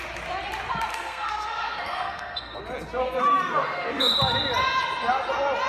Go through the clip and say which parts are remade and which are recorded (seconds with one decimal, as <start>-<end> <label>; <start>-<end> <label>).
0.0-0.9 recorded; 0.9-2.6 remade; 2.6-3.0 recorded; 3.0-4.2 remade; 4.2-5.7 recorded